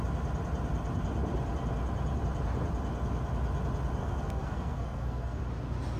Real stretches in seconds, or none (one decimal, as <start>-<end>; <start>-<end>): 0.0-4.0; 5.4-6.0